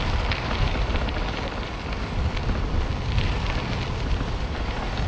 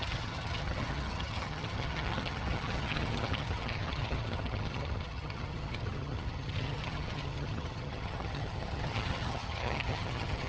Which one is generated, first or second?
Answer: second